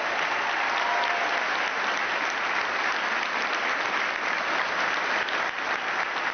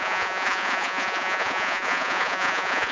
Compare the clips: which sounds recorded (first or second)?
first